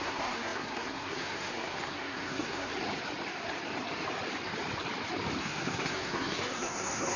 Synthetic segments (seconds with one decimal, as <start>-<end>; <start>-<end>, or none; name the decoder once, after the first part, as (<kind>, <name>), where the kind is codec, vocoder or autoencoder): 0.0-2.7 (codec, SNAC); 5.4-7.2